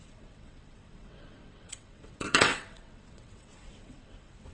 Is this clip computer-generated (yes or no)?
yes